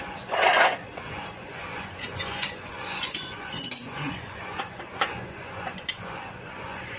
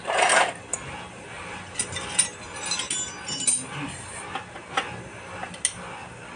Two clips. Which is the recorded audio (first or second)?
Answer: second